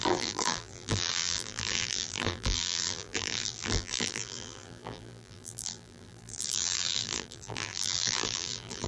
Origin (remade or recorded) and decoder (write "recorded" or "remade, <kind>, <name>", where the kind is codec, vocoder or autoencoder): remade, vocoder, BigVGAN v2